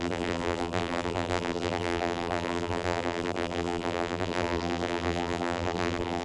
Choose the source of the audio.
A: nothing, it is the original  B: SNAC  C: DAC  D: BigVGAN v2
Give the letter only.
D